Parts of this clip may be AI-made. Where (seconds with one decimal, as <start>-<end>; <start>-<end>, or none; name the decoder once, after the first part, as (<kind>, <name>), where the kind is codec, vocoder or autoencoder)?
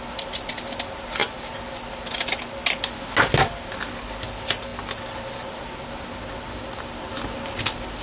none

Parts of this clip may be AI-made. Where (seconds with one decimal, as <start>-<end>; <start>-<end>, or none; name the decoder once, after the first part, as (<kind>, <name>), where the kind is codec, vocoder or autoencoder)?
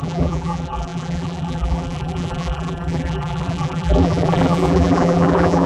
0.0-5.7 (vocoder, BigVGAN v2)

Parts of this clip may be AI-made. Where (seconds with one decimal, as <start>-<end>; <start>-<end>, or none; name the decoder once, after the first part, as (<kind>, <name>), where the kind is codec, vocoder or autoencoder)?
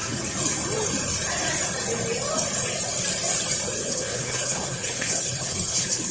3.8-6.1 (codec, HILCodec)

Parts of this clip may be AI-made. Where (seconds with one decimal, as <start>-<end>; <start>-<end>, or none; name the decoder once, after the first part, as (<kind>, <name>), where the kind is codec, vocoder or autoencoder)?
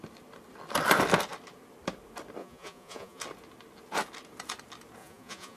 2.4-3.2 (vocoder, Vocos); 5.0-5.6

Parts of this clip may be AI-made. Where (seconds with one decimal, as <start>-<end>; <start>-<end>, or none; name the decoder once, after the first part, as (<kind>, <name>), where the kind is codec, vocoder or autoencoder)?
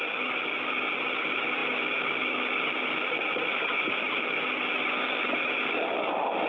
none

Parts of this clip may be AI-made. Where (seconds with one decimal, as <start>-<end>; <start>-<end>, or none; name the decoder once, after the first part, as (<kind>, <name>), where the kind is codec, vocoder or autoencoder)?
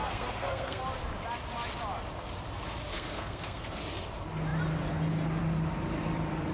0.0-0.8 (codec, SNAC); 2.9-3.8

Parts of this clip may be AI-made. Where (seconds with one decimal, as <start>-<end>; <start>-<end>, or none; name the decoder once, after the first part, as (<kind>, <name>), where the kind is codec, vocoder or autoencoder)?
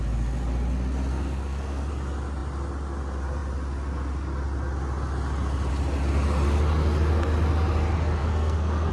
1.1-1.9 (codec, SNAC); 8.2-8.9